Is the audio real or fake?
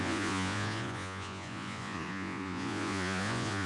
fake